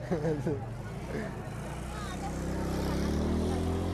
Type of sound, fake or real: real